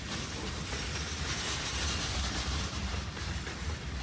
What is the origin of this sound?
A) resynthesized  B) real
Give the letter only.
A